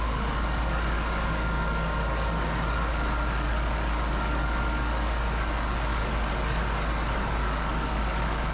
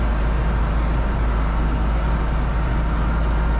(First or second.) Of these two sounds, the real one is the second